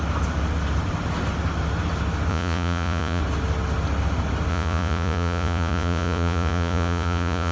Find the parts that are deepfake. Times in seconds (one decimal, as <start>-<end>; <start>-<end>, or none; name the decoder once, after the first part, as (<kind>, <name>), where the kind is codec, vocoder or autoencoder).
2.3-3.2 (vocoder, Vocos); 4.5-7.5